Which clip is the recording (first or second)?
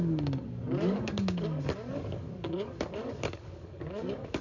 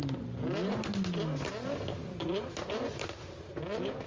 second